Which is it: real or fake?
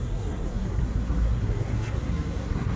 fake